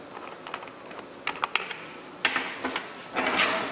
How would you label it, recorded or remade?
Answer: recorded